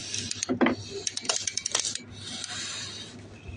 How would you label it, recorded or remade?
recorded